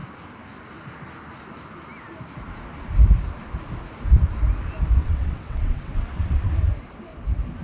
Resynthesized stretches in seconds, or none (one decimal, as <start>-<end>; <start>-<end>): 5.0-6.5